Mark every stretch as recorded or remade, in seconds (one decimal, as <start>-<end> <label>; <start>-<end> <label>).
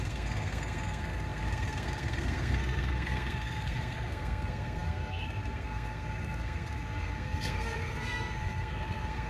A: 0.0-9.3 remade